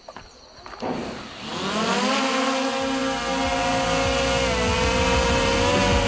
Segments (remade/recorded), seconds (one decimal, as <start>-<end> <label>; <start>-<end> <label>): 0.0-6.1 recorded